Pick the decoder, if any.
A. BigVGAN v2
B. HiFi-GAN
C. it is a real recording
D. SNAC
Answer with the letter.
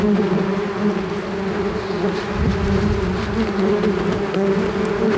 C